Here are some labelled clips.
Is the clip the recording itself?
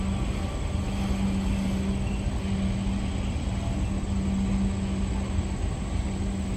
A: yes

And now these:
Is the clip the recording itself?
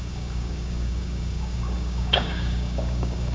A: no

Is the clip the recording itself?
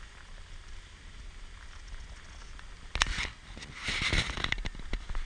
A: yes